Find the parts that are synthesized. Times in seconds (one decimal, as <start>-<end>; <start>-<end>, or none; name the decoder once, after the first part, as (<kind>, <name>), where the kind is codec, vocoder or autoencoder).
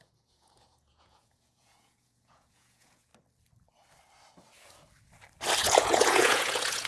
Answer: 0.0-3.1 (vocoder, Vocos); 5.6-6.9